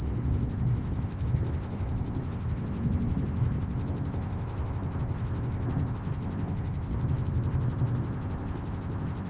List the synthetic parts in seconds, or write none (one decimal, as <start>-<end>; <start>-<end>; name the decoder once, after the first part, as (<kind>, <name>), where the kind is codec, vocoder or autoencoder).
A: 0.0-9.3 (codec, SNAC)